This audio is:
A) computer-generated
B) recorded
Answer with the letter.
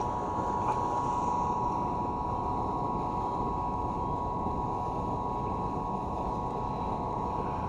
B